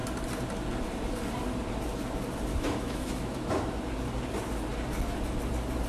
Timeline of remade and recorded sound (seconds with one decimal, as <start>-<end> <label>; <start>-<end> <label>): 0.0-2.5 recorded; 2.5-3.8 remade; 3.8-5.9 recorded

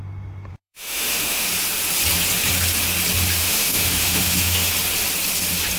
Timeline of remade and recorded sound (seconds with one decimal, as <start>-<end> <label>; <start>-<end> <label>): 0.0-0.5 recorded; 0.5-1.5 remade; 1.5-3.4 recorded; 3.4-4.7 remade; 4.7-5.8 recorded

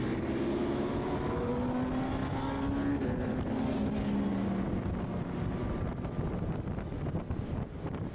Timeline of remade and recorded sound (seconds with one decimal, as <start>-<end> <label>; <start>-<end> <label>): 0.0-0.6 recorded; 0.6-1.5 remade; 1.5-8.1 recorded